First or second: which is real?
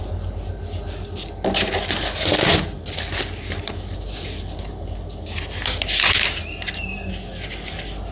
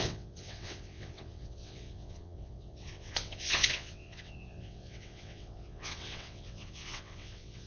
first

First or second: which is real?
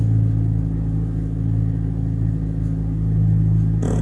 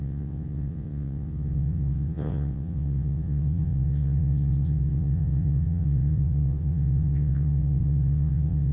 first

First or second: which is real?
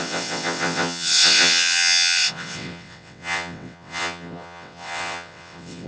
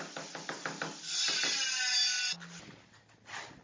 second